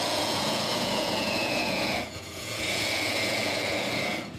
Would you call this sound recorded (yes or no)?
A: no